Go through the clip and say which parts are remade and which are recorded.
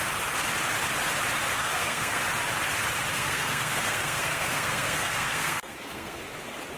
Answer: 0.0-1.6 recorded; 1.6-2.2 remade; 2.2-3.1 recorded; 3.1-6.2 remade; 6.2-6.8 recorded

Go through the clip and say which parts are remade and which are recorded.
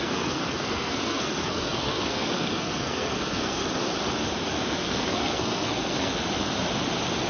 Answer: 0.0-3.6 remade; 3.6-4.5 recorded; 4.5-6.2 remade; 6.2-7.3 recorded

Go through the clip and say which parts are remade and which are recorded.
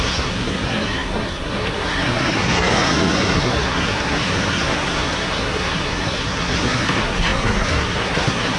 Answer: 0.0-8.6 remade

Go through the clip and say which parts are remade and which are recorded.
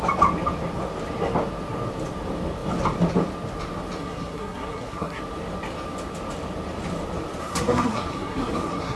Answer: 0.0-4.0 recorded; 4.0-5.2 remade; 5.2-7.4 recorded; 7.4-9.0 remade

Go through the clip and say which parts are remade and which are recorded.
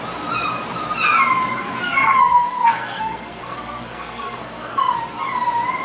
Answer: 0.0-1.5 recorded; 1.5-5.0 remade; 5.0-5.8 recorded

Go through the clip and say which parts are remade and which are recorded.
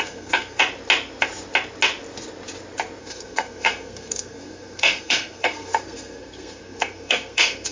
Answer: 0.0-0.6 remade; 0.6-3.0 recorded; 3.0-7.7 remade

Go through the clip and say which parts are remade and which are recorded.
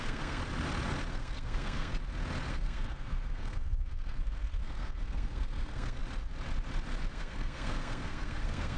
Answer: 0.0-0.4 remade; 0.4-1.1 recorded; 1.1-1.9 remade; 1.9-2.5 recorded; 2.5-6.0 remade; 6.0-7.1 recorded; 7.1-8.8 remade